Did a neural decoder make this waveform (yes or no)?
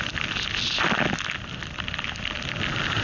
no